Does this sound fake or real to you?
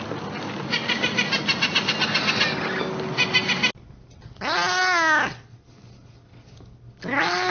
real